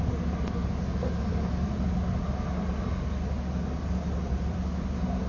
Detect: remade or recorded recorded